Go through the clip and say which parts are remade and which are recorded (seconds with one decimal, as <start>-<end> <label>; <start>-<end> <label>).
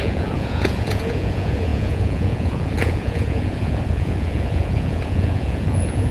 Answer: 0.0-6.1 remade